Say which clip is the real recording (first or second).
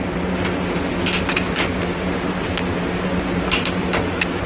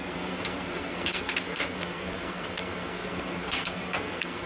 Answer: first